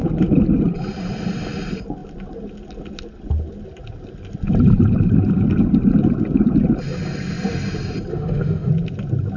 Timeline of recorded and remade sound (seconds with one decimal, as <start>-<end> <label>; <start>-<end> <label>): 0.0-8.1 recorded; 8.1-8.7 remade; 8.7-9.4 recorded